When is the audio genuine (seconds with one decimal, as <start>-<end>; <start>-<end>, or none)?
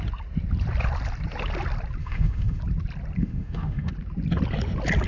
0.0-2.0; 2.6-3.2; 3.9-5.1